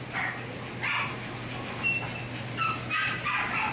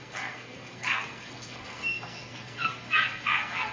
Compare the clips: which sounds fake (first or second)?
second